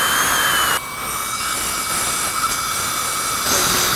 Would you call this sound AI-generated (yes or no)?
no